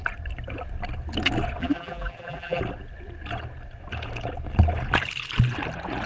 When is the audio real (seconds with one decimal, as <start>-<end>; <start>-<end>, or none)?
0.0-1.6; 2.6-6.1